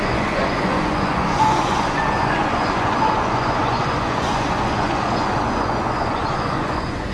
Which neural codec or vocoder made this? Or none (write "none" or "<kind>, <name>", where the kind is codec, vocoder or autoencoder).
vocoder, Vocos